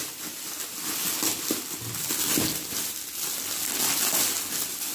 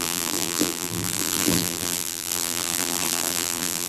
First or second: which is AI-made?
second